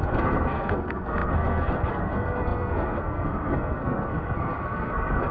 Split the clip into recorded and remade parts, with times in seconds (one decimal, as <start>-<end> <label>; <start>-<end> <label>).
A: 0.0-5.3 remade